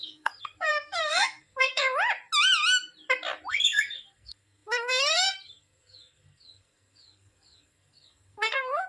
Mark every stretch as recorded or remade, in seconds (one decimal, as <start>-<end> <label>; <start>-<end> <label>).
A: 0.0-1.8 remade; 1.8-3.5 recorded; 3.5-8.9 remade